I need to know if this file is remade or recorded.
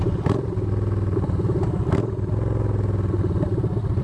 recorded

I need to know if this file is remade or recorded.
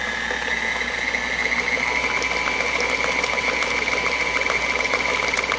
recorded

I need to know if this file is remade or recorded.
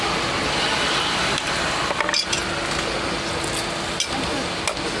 recorded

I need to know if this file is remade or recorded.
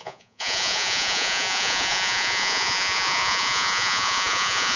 remade